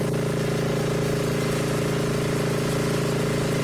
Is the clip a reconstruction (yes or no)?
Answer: no